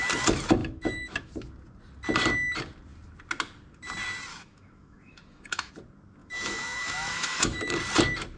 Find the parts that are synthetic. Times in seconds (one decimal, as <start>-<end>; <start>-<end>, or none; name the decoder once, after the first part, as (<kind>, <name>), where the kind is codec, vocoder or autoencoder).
0.6-1.3 (autoencoder, DAC-VAE); 4.3-5.7; 6.2-7.7

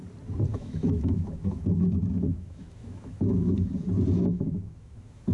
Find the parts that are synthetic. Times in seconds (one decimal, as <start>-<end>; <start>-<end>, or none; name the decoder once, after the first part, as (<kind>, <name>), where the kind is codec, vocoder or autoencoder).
0.5-3.7 (autoencoder, DAC-VAE); 4.3-5.3

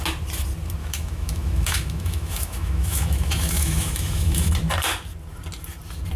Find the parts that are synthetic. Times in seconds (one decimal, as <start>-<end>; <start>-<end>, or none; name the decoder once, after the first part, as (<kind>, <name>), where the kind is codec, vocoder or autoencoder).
0.8-4.5 (autoencoder, DAC-VAE)

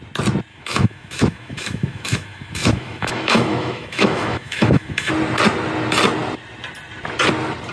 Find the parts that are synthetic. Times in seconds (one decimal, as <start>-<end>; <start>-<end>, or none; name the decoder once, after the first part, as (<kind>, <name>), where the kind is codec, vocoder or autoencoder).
0.5-5.1 (autoencoder, DAC-VAE)

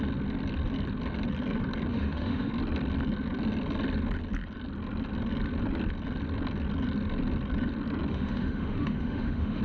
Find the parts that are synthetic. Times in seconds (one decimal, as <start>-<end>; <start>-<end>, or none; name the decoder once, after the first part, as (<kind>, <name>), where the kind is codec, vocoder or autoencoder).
1.9-2.5 (autoencoder, DAC-VAE); 8.1-9.6

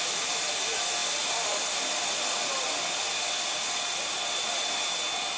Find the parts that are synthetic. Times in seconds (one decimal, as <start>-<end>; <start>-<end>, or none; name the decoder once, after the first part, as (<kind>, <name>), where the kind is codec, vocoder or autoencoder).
none